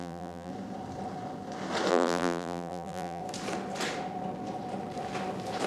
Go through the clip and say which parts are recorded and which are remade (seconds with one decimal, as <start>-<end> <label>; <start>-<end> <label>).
0.0-0.5 remade; 0.5-1.9 recorded; 1.9-3.2 remade; 3.2-5.7 recorded